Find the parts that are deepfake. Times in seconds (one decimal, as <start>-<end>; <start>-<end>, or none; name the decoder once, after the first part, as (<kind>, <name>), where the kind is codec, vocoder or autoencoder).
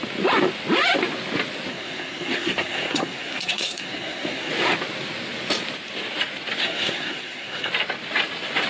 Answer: 1.7-4.5 (codec, SNAC); 6.6-7.7